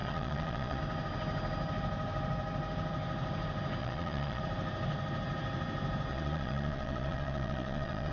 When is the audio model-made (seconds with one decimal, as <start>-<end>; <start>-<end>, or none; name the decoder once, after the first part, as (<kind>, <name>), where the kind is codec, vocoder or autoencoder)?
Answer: 0.0-0.8 (vocoder, Vocos); 3.8-4.4; 6.1-8.1